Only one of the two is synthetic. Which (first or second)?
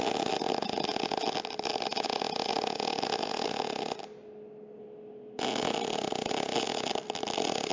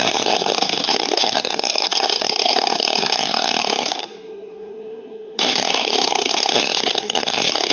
second